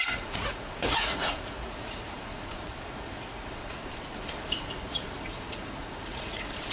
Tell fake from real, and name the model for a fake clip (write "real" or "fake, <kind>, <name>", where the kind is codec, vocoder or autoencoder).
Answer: fake, vocoder, Vocos